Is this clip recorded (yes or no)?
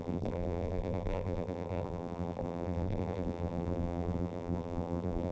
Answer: no